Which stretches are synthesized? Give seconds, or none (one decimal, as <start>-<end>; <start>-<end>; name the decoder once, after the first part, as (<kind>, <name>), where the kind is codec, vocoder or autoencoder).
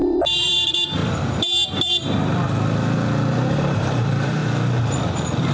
0.0-1.0 (vocoder, BigVGAN v2); 3.5-4.4